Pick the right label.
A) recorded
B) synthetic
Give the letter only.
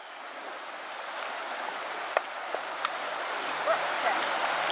A